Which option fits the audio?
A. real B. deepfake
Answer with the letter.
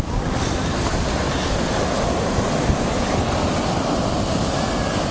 A